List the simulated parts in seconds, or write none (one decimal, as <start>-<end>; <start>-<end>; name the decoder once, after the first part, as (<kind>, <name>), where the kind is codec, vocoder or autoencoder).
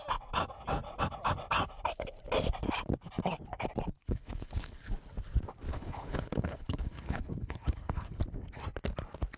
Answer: 4.0-4.9 (codec, HILCodec); 5.7-8.2